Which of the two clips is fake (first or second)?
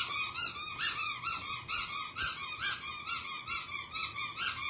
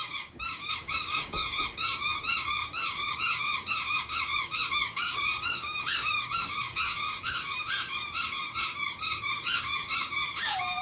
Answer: second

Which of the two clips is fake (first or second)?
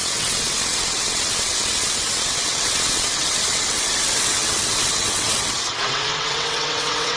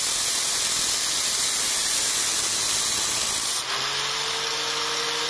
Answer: first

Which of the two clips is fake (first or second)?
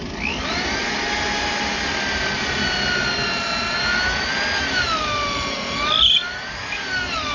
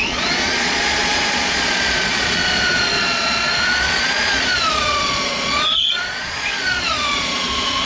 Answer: second